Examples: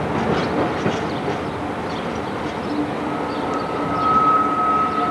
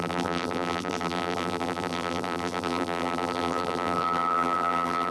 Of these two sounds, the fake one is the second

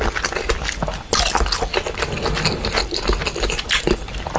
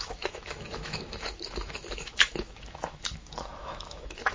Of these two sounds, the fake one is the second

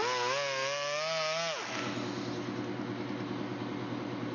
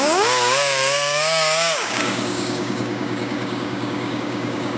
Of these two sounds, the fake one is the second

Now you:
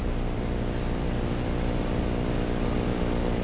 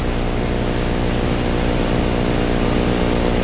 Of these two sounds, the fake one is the first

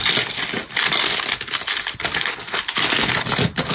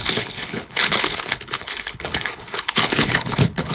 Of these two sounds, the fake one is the second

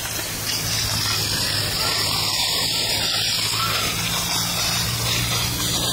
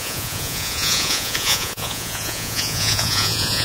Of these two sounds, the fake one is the second